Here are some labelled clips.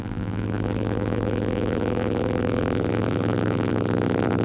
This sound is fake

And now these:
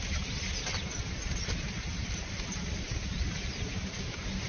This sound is real